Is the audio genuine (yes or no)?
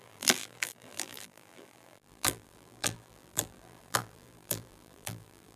no